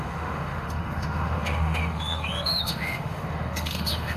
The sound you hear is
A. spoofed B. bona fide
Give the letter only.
A